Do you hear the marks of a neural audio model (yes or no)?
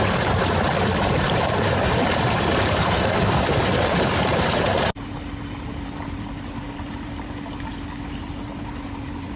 yes